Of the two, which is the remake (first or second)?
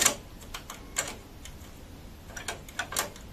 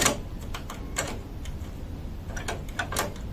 second